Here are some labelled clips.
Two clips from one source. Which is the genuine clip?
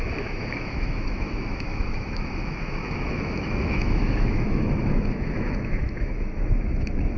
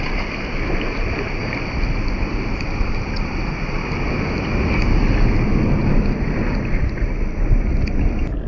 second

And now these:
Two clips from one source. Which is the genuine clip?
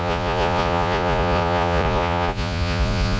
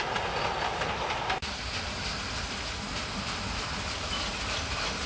second